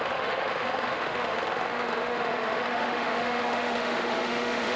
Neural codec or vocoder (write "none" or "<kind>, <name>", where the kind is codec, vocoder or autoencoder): autoencoder, DAC-VAE